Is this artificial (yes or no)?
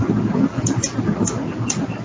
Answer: no